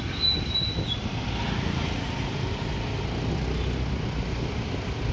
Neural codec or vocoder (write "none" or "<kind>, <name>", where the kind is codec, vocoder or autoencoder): none